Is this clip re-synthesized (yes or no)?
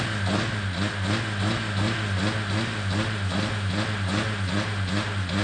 no